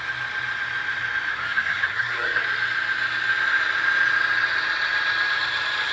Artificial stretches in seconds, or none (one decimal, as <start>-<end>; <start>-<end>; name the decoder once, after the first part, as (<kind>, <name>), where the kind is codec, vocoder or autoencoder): 1.3-2.4 (codec, SNAC)